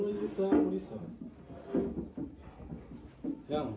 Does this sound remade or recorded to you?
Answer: recorded